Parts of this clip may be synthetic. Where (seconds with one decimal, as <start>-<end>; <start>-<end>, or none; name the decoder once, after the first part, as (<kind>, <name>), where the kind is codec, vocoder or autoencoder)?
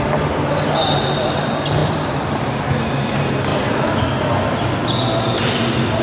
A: 1.8-2.3 (vocoder, BigVGAN v2); 3.5-4.0